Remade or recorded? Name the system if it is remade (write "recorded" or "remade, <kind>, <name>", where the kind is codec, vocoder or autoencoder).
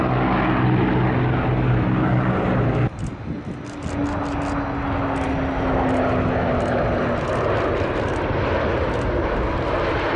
recorded